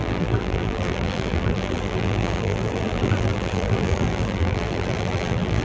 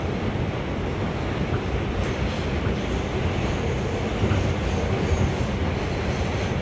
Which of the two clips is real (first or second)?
second